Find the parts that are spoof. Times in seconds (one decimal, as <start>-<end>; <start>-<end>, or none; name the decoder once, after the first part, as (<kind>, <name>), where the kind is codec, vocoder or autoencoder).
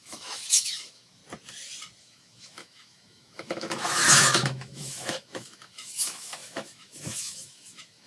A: 0.0-1.2 (autoencoder, DAC-VAE); 2.0-8.1